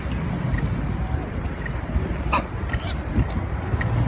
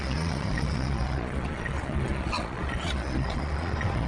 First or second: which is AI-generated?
second